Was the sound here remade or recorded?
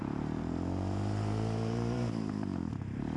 remade